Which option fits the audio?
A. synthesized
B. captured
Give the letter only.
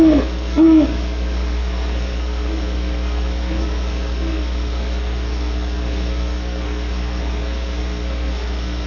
A